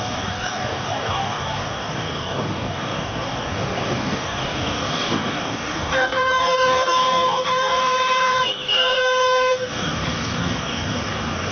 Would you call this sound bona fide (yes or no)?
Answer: no